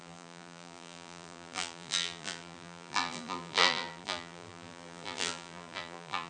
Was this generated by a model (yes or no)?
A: yes